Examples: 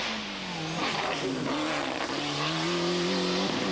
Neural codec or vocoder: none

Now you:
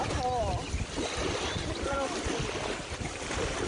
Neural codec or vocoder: none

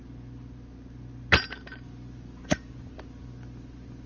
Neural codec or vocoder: none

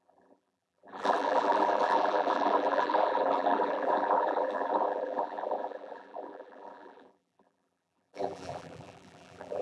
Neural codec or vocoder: vocoder, BigVGAN v2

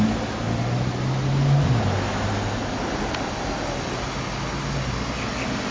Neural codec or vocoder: none